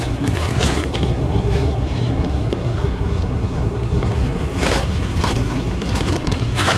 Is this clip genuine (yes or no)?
no